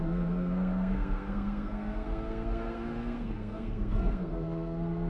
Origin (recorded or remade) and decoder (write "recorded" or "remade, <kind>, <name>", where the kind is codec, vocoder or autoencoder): remade, codec, SNAC